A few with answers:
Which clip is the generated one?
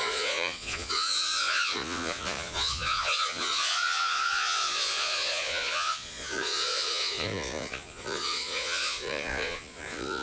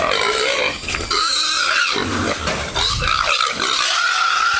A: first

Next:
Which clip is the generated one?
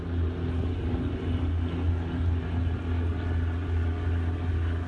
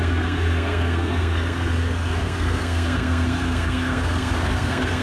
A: second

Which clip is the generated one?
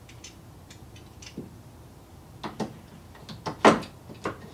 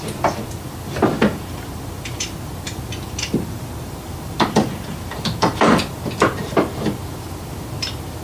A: second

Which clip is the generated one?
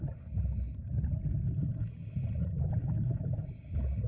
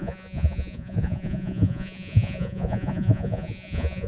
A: second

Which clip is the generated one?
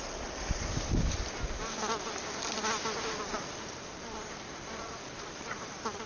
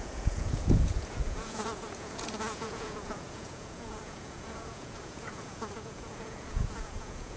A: second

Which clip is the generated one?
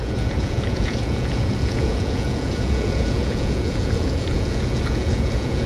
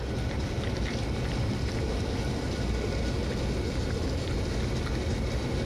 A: first